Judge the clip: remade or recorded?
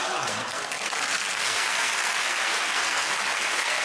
remade